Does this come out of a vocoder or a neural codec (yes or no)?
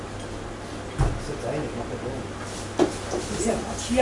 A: no